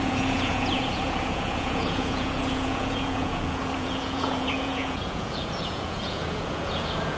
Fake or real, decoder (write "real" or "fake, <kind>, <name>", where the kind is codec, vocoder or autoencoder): fake, vocoder, Vocos